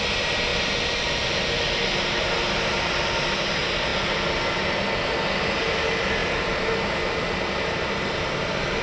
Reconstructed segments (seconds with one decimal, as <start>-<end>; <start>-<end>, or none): none